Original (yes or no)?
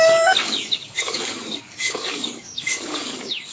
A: no